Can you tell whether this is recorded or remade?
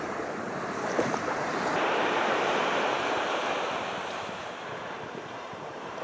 remade